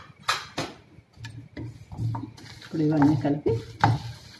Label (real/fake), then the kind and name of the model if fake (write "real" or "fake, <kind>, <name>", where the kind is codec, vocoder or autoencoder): real